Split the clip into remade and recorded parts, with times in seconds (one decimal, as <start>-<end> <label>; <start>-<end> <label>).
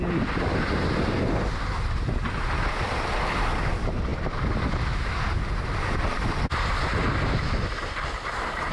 0.0-8.7 recorded